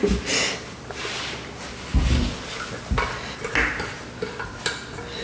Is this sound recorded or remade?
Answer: recorded